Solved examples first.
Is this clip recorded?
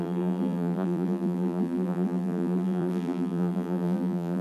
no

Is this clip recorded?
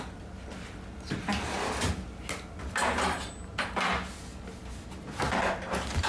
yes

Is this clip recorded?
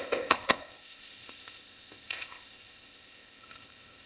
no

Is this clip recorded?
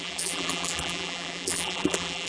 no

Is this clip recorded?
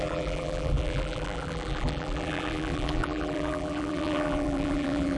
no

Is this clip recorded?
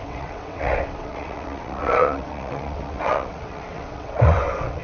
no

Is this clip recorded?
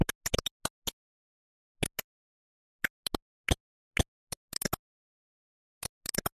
yes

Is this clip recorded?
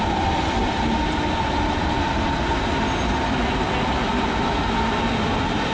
yes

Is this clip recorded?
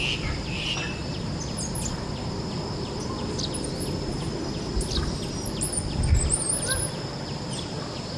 yes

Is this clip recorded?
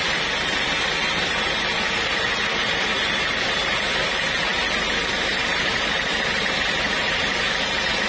yes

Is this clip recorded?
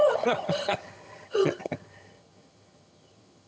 no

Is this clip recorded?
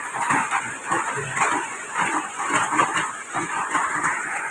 no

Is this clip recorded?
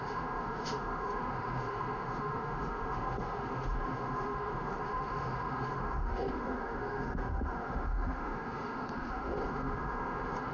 no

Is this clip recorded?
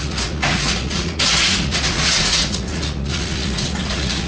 no